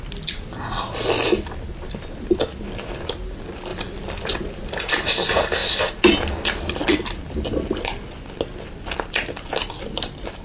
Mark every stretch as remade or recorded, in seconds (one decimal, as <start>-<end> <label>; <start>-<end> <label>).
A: 0.0-10.4 recorded